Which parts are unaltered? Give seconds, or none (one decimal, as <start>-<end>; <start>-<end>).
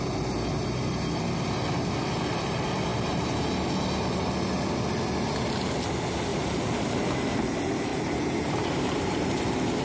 0.0-2.9; 3.5-7.9; 9.4-9.8